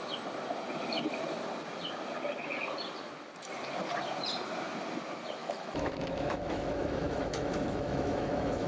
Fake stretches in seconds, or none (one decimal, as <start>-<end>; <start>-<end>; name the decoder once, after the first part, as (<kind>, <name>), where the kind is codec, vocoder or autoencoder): 5.4-8.7 (autoencoder, DAC-VAE)